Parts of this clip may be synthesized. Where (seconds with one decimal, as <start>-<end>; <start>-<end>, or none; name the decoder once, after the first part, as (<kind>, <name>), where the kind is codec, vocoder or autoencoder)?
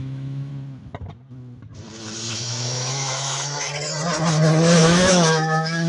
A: 0.0-0.5 (autoencoder, DAC-VAE); 2.3-3.7; 4.8-5.9